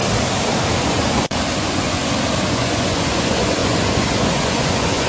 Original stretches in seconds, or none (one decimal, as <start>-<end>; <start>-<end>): 0.0-0.8; 2.0-2.5